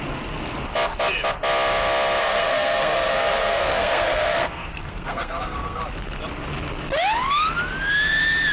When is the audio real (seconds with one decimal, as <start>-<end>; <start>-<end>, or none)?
0.0-2.2; 5.8-8.5